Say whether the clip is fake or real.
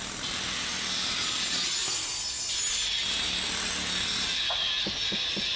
real